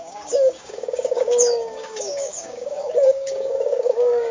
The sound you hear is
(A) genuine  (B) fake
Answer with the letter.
B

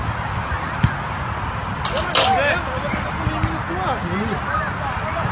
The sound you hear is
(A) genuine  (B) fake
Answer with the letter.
A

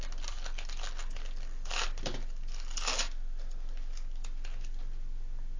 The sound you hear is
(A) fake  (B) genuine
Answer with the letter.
B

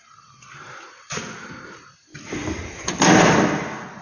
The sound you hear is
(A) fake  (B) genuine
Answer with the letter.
B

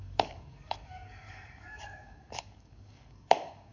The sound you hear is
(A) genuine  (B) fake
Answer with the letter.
B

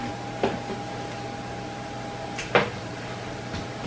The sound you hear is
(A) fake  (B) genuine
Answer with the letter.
B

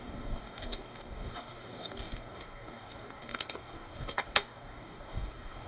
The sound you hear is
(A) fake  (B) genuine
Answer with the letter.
A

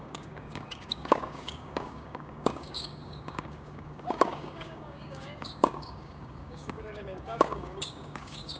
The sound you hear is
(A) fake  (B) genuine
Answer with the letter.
A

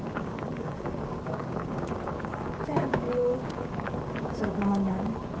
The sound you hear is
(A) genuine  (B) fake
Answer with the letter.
B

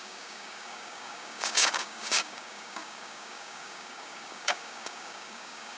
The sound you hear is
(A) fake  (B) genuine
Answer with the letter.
A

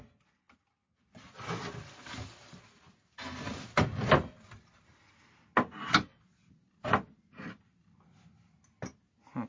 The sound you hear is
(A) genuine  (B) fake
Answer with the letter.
A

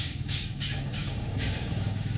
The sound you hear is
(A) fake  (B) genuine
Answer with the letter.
A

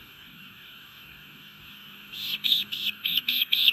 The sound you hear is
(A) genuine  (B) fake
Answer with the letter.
B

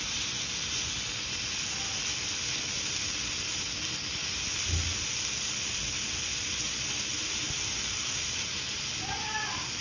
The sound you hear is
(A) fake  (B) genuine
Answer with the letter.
B